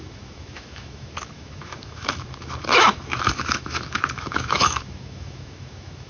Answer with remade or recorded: remade